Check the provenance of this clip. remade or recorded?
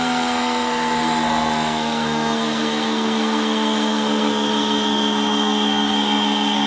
remade